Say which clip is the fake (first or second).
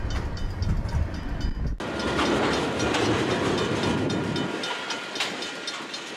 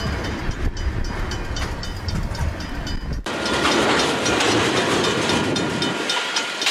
second